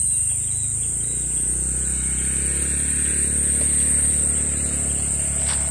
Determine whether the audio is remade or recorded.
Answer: recorded